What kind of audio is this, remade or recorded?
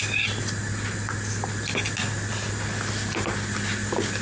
recorded